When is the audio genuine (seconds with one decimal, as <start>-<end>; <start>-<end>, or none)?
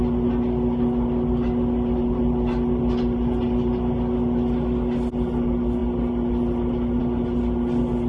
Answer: 0.0-8.1